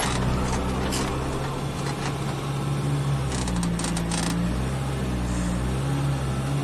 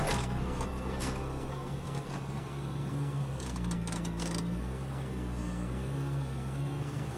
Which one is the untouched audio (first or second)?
first